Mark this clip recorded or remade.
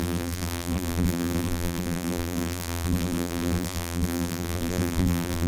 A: remade